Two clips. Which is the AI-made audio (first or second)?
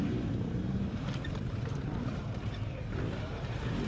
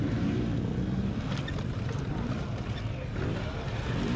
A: first